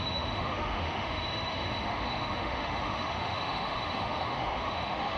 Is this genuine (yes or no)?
no